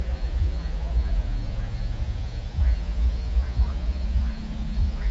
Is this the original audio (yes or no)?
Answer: no